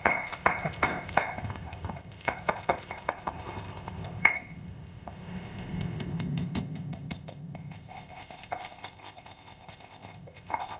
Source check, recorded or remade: remade